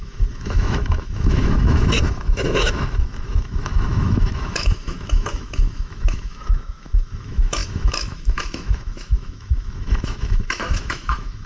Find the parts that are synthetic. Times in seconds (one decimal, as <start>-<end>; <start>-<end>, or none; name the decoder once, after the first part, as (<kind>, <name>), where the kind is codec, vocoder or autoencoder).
0.0-11.5 (autoencoder, DAC-VAE)